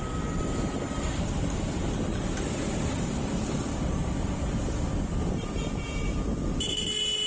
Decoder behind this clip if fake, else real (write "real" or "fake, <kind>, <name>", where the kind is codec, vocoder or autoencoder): real